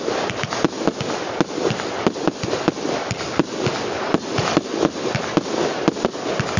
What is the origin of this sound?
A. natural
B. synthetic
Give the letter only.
A